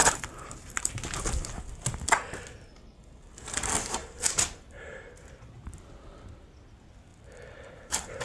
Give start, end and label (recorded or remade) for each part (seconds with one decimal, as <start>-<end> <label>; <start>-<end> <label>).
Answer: 0.0-0.9 remade; 0.9-4.0 recorded; 4.0-5.1 remade; 5.1-7.1 recorded; 7.1-8.2 remade